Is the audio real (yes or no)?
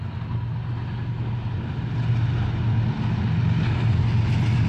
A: yes